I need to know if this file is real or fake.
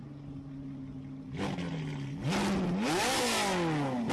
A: real